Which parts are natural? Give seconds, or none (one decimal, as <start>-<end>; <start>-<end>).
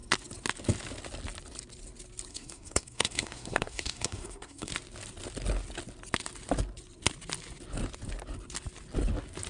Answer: 0.0-2.3; 4.7-9.5